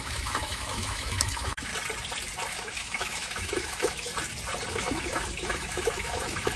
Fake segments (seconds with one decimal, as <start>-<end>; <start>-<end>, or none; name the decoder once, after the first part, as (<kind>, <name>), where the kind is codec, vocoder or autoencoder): 0.0-1.7 (autoencoder, DAC-VAE); 2.5-4.1; 4.7-6.6